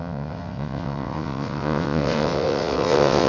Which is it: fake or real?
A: fake